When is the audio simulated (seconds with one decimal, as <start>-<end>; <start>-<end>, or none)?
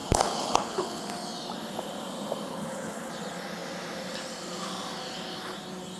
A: 0.0-1.0; 2.5-3.1